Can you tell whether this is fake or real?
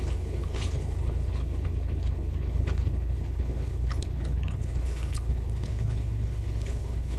fake